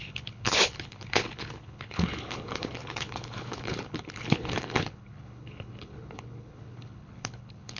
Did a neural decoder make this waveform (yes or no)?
yes